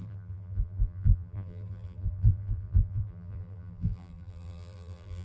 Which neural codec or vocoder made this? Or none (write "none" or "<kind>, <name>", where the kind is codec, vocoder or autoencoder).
vocoder, BigVGAN v2